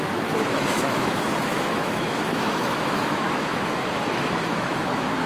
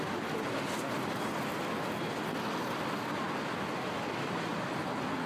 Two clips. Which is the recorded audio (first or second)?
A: second